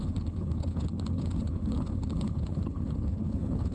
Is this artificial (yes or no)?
yes